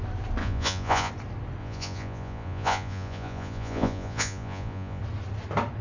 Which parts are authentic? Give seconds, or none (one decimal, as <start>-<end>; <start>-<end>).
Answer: 0.0-0.4; 1.1-1.6; 5.0-5.8